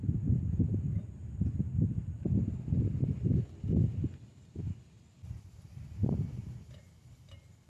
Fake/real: real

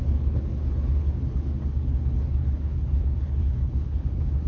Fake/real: fake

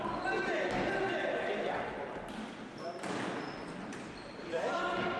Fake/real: real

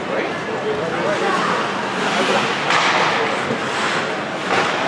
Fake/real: real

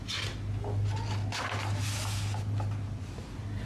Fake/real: real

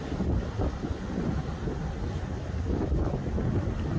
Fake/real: fake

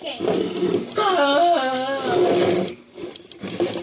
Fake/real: real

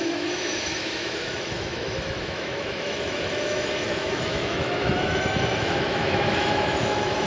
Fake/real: fake